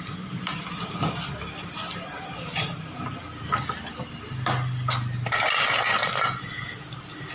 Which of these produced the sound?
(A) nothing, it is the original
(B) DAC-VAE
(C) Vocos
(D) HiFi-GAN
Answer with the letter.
A